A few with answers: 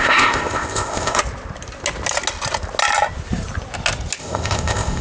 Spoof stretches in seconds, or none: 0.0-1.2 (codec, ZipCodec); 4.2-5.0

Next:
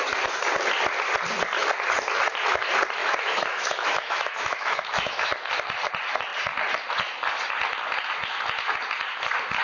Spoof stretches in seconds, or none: 3.0-5.3 (autoencoder, DAC-VAE)

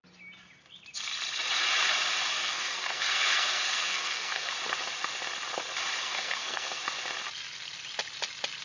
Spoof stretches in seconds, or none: 2.3-4.5 (codec, SNAC); 6.0-6.8

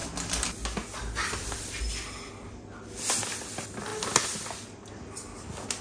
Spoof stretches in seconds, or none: none

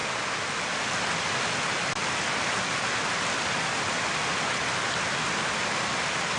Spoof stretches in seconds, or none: none

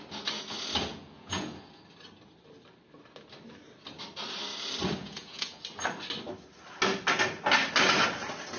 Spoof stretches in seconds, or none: 0.9-1.7 (vocoder, Vocos); 5.0-5.6

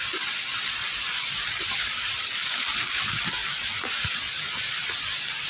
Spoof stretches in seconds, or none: none

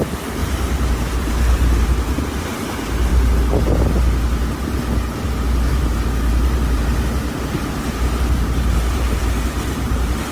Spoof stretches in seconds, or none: 0.0-3.1 (vocoder, BigVGAN v2); 5.7-10.3